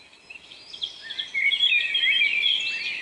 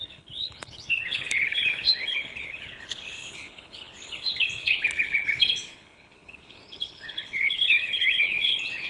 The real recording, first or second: first